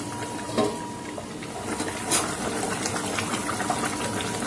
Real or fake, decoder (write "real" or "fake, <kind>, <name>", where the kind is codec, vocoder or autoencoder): real